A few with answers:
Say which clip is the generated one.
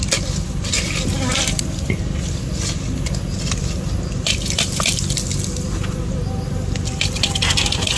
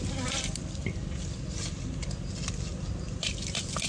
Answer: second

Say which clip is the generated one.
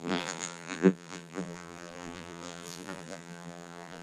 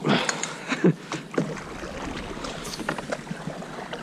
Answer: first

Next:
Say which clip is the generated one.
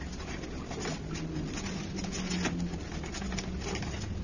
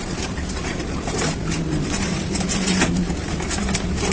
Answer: second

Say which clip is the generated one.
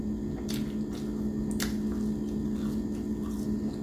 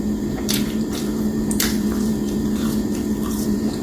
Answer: second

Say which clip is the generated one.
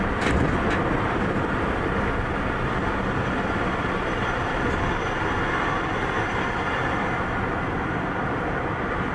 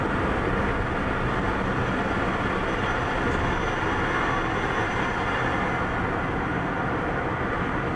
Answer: first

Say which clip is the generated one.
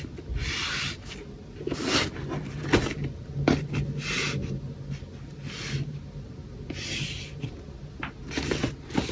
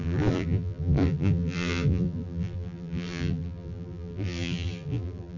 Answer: second